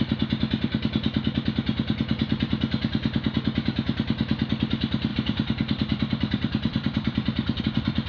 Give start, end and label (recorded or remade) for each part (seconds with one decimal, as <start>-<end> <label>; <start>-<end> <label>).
0.0-5.1 recorded; 5.1-7.6 remade; 7.6-8.1 recorded